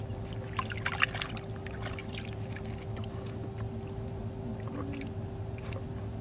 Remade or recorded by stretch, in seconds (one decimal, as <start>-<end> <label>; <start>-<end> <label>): 0.0-6.2 recorded